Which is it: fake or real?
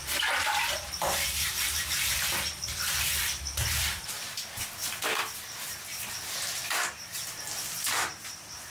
fake